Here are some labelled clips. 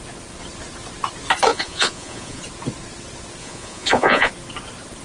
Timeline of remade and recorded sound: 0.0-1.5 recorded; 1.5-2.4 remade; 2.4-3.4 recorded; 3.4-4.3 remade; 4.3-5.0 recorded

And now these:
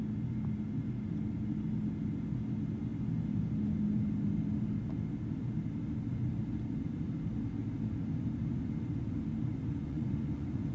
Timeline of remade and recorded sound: 0.0-9.7 recorded; 9.7-10.7 remade

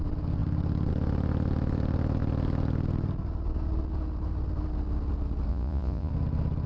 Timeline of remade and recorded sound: 0.0-5.5 recorded; 5.5-6.1 remade; 6.1-6.7 recorded

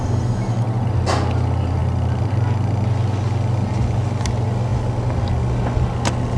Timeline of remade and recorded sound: 0.0-6.4 recorded

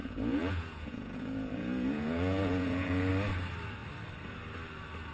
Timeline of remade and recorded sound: 0.0-3.1 remade; 3.1-5.1 recorded